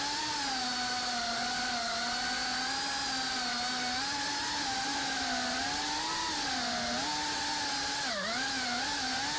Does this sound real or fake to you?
real